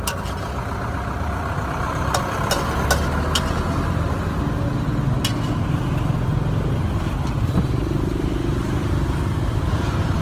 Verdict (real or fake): real